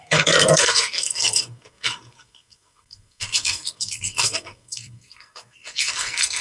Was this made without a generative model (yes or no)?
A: no